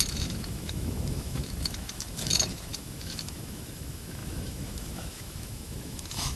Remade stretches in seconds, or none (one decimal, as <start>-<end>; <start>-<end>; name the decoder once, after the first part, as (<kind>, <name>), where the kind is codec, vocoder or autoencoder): 0.0-6.4 (autoencoder, DAC-VAE)

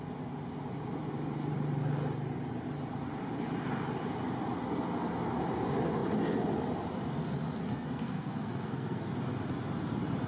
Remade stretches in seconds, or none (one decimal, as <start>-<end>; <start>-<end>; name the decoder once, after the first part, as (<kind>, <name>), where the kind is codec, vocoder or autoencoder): 7.7-9.1 (codec, SNAC)

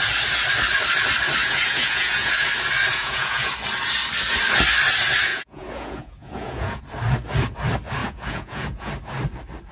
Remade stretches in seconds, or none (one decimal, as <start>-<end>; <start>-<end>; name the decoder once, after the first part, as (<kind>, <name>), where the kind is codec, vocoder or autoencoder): 1.4-2.3 (vocoder, Vocos); 2.9-3.5; 5.3-6.8; 8.0-8.9

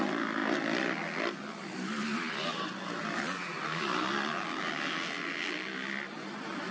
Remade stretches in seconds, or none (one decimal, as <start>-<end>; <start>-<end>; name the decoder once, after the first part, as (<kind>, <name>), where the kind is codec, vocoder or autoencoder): none

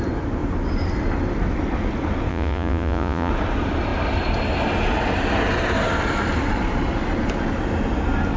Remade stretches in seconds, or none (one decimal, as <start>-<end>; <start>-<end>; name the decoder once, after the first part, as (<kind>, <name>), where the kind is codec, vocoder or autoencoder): 2.3-3.3 (vocoder, Vocos)

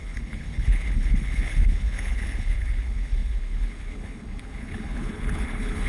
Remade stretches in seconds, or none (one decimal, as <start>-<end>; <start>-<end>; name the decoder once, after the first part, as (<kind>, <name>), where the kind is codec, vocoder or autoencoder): 0.0-5.9 (codec, HILCodec)

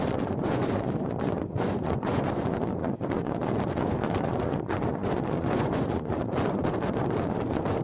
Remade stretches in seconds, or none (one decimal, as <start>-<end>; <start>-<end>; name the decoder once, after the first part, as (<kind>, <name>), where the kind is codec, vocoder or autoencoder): 0.0-7.8 (vocoder, Vocos)

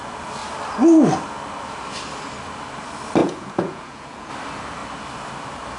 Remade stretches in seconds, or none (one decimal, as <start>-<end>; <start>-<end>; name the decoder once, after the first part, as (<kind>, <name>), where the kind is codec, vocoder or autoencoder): 3.2-4.3 (vocoder, Vocos)